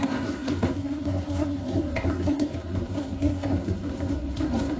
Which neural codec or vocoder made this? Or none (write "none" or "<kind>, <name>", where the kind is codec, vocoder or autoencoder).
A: codec, SNAC